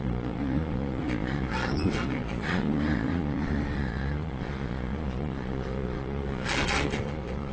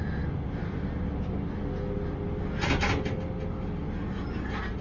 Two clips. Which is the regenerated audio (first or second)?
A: first